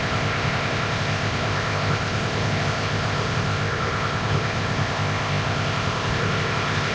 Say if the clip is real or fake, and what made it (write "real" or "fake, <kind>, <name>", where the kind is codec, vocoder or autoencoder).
fake, codec, ZipCodec